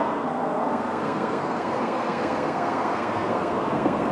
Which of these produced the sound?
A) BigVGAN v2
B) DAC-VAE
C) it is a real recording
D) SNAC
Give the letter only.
D